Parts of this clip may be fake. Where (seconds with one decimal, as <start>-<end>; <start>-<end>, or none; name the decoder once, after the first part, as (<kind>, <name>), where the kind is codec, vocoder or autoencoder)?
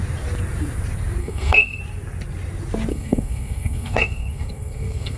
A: 1.2-1.8 (codec, SNAC); 2.9-5.2